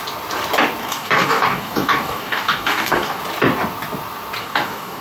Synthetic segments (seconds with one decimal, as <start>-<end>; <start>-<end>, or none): 0.8-3.2; 4.4-5.0